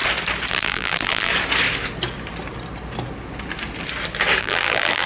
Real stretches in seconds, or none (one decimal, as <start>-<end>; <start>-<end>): 0.0-0.5; 1.3-4.4